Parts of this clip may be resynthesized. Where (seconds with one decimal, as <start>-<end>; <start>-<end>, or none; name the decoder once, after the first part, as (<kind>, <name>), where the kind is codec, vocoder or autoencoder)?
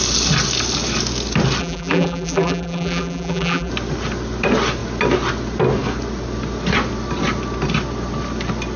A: 1.6-3.7 (vocoder, BigVGAN v2)